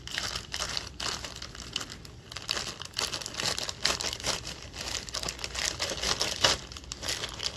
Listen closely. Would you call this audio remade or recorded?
remade